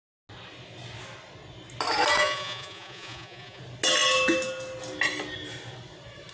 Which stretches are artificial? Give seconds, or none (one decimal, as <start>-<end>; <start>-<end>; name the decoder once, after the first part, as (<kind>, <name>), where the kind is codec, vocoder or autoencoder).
2.2-3.6 (vocoder, Vocos)